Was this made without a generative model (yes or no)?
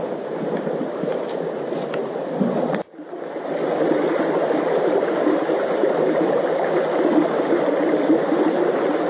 yes